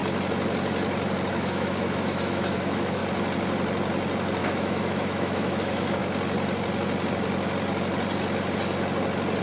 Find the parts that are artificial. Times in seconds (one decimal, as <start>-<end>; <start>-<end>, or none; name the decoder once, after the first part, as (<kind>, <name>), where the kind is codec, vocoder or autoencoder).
1.3-3.0 (autoencoder, DAC-VAE); 4.4-6.0